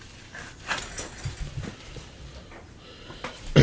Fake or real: real